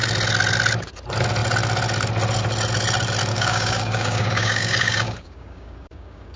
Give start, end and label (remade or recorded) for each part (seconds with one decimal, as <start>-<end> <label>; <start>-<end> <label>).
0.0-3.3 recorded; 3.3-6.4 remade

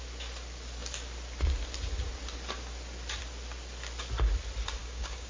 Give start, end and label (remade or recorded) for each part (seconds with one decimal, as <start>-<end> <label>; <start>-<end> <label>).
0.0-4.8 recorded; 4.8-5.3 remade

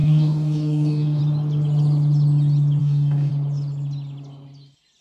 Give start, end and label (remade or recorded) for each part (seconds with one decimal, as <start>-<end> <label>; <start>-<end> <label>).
0.0-1.2 remade; 1.2-2.8 recorded; 2.8-3.3 remade; 3.3-5.0 recorded

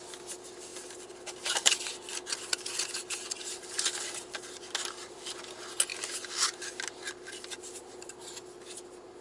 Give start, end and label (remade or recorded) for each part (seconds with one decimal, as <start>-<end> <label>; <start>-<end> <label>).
0.0-9.2 recorded

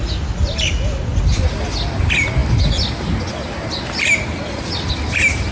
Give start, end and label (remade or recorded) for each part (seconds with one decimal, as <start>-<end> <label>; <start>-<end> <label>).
0.0-5.5 recorded